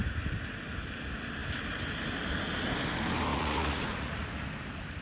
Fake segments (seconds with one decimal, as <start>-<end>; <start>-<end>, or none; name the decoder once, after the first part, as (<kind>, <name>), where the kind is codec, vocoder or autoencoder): 3.3-4.1 (vocoder, Vocos)